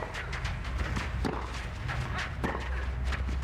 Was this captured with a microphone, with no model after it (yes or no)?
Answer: yes